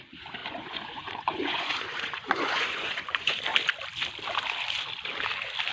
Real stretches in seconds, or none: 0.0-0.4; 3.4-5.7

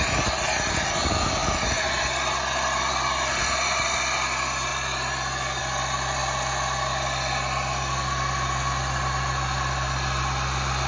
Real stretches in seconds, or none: 0.0-10.9